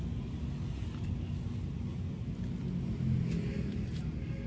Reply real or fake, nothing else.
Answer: real